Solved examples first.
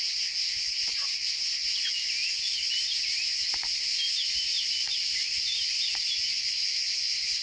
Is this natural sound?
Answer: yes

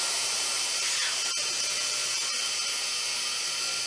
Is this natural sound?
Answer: yes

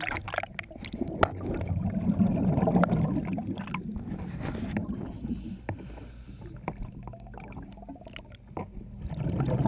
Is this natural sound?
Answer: yes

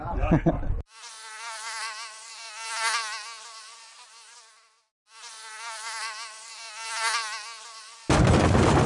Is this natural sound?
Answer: yes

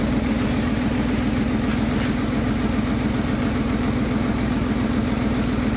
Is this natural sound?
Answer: yes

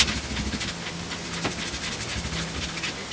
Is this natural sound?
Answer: yes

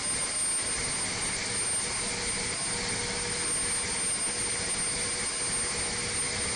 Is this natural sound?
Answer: yes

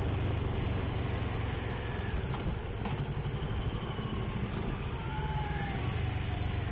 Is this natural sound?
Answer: yes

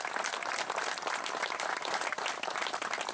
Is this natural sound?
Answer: yes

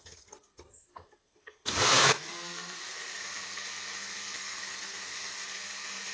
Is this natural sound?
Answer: no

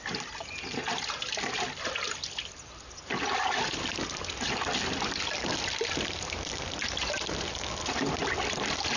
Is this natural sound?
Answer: yes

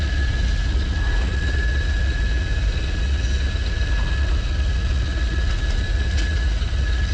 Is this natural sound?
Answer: no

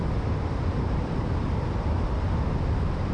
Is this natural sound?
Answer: no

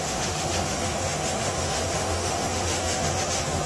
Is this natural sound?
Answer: no